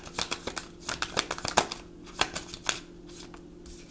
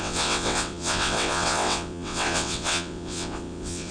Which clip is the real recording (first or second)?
first